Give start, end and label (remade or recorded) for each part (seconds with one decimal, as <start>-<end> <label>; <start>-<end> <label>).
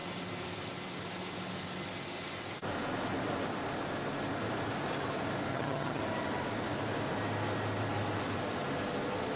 0.0-5.5 recorded; 5.5-6.0 remade; 6.0-9.4 recorded